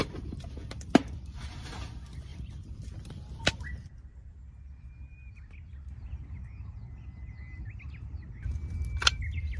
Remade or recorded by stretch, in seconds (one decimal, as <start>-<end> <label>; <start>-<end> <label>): 0.0-2.3 recorded; 2.3-3.5 remade; 3.5-4.1 recorded; 4.1-5.5 remade; 5.5-9.6 recorded